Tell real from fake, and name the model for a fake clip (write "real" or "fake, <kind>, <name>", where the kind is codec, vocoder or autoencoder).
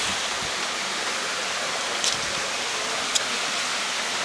real